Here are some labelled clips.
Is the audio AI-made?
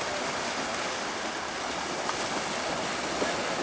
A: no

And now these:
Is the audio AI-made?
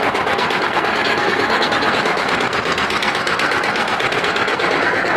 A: yes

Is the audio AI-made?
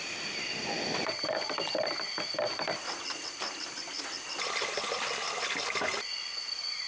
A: no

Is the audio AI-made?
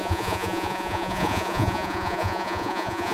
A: yes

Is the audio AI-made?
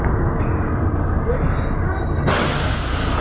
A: no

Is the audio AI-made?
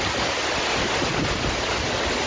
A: no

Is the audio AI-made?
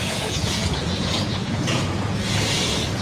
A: yes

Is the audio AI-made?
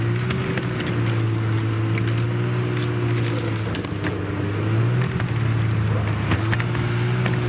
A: no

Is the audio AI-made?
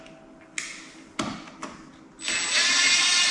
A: no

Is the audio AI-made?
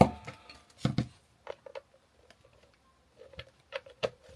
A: no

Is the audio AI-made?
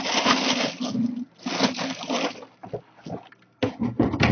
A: no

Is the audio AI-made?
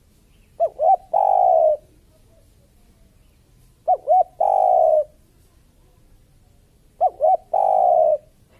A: no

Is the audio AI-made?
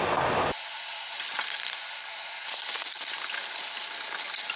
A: no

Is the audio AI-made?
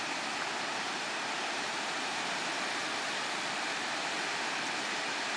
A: no